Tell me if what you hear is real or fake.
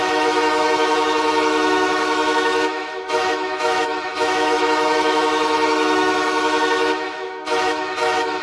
fake